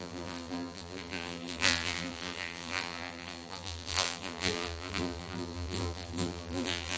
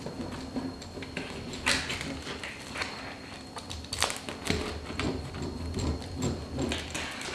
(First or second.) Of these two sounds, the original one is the second